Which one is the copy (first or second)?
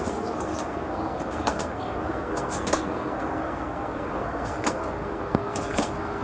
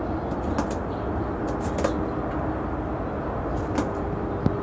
first